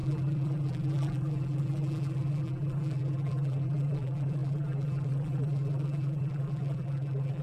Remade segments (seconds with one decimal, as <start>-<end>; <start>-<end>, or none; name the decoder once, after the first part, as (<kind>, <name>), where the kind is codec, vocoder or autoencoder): 0.0-7.4 (vocoder, BigVGAN v2)

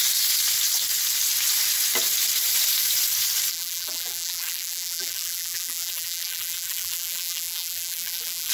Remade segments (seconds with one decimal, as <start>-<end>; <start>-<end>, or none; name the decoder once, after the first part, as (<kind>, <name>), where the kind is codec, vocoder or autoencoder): 3.5-8.5 (vocoder, BigVGAN v2)

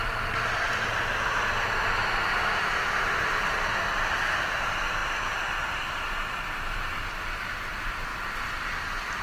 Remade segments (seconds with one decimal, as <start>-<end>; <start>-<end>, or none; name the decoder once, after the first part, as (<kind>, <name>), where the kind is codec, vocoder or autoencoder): 5.0-5.8 (vocoder, BigVGAN v2); 8.1-9.2

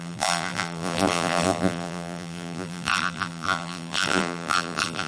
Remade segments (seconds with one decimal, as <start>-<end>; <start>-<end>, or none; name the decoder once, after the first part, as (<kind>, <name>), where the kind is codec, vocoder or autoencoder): 0.0-5.1 (vocoder, BigVGAN v2)